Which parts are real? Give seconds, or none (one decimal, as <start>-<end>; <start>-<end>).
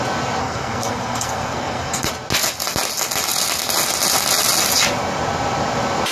0.0-0.4; 2.1-6.1